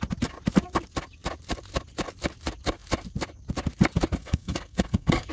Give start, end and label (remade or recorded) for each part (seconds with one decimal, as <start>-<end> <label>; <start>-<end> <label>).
0.0-4.2 recorded; 4.2-5.3 remade